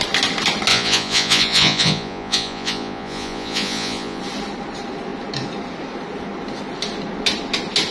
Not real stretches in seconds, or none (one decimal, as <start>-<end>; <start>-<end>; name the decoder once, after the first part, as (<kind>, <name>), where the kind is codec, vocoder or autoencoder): 0.7-4.2 (vocoder, Vocos)